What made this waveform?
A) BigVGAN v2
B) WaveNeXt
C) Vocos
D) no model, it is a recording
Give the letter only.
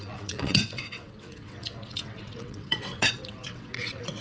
B